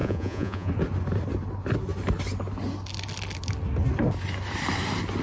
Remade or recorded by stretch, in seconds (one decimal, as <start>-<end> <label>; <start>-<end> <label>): 0.0-0.7 remade; 0.7-5.2 recorded